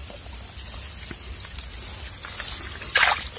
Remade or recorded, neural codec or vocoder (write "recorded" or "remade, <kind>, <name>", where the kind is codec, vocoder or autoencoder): recorded